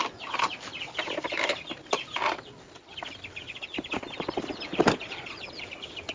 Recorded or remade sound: recorded